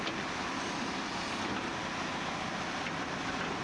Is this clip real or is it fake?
real